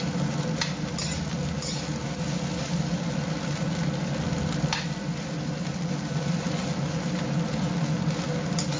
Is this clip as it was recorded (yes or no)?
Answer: yes